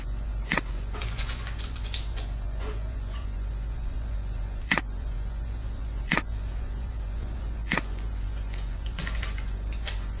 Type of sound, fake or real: fake